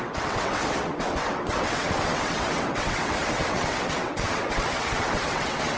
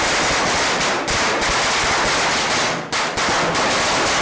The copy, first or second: first